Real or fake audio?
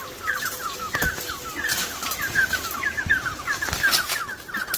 real